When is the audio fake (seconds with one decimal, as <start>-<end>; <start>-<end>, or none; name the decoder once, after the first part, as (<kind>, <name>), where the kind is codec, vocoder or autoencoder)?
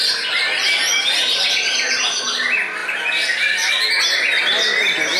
none